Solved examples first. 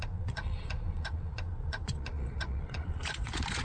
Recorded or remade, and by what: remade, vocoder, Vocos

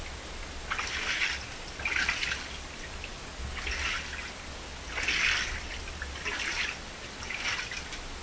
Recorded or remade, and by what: recorded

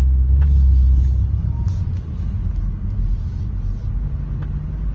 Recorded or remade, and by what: recorded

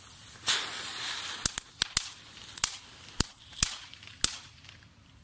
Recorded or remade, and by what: recorded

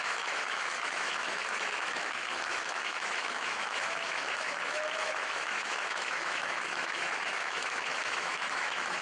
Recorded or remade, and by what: remade, autoencoder, DAC-VAE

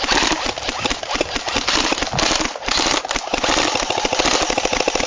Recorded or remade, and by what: recorded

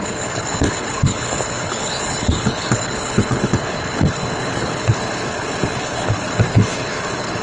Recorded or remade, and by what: remade, codec, HILCodec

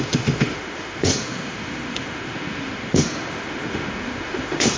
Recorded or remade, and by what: remade, autoencoder, DAC-VAE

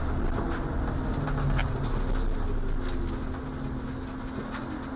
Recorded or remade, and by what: recorded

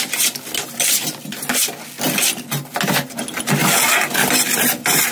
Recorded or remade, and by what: recorded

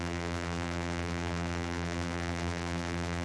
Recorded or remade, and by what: remade, vocoder, BigVGAN v2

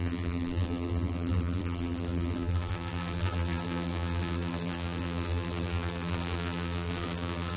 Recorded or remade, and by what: remade, vocoder, BigVGAN v2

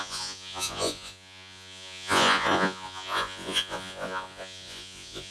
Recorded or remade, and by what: remade, vocoder, Vocos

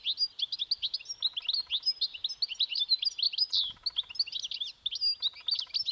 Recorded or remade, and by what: recorded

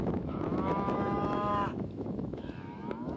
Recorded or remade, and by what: remade, autoencoder, DAC-VAE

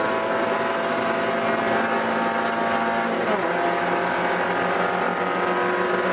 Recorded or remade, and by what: recorded